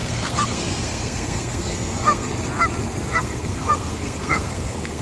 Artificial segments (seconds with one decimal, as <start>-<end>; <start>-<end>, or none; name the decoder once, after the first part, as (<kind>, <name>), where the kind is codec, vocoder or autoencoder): 0.0-2.3 (codec, SNAC); 3.2-5.0